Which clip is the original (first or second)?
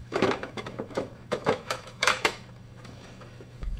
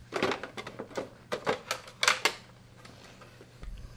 second